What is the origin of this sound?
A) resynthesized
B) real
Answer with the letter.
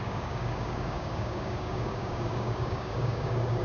A